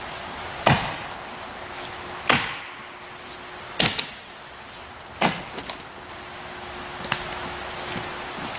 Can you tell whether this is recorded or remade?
recorded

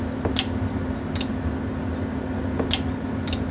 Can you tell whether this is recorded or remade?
recorded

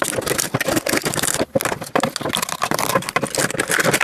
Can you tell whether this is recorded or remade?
recorded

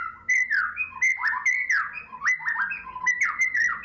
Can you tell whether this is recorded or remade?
recorded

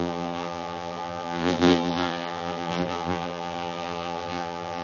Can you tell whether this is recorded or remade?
remade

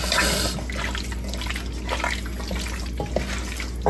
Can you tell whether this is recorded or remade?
recorded